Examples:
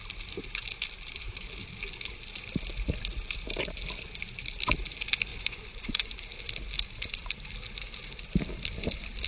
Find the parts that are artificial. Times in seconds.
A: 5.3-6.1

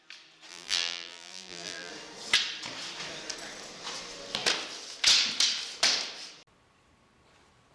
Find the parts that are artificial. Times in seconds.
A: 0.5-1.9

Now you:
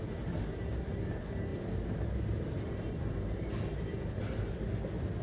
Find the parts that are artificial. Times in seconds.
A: none

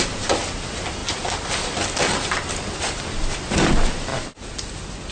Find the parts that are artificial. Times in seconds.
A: none

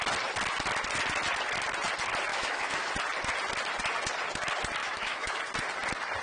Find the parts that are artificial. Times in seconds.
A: 2.3-2.9; 4.8-5.4

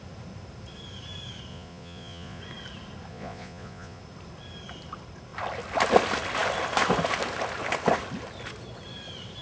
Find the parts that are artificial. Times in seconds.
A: 1.5-2.4; 3.1-4.0

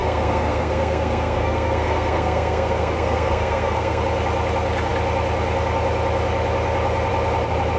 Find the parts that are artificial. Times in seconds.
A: 0.0-4.0